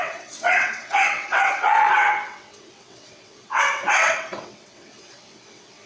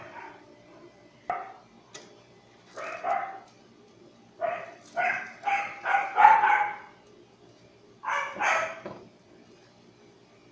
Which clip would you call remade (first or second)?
first